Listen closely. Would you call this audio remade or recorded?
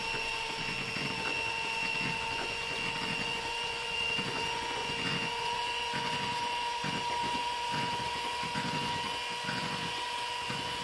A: remade